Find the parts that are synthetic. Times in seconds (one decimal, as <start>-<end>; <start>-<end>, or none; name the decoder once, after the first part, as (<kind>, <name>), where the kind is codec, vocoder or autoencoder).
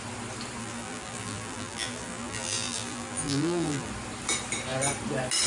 0.6-3.9 (vocoder, BigVGAN v2)